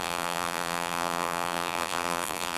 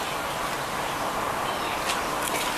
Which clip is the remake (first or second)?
first